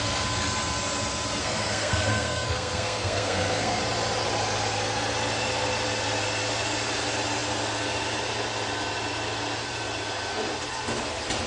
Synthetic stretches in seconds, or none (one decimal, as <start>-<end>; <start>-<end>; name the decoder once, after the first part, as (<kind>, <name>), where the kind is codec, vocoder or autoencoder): 1.4-3.8 (codec, SNAC)